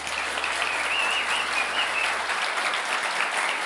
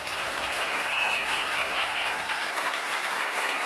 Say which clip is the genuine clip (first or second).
first